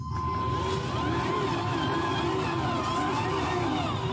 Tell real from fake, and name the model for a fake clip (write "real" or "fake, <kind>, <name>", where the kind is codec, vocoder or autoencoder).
real